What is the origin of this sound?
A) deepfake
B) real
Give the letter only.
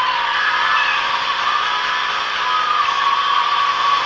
B